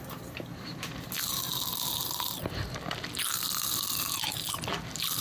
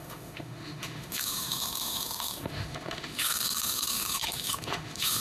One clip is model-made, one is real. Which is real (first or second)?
first